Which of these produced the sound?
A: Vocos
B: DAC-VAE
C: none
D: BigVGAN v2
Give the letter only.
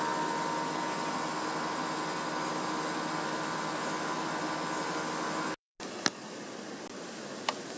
C